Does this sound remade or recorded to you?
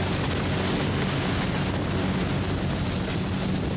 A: recorded